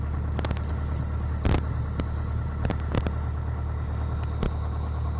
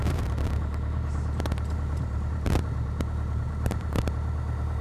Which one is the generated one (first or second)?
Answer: second